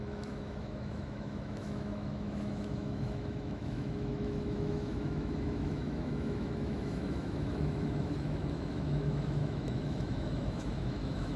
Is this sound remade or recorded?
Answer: remade